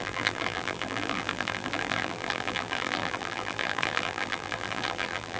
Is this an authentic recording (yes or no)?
no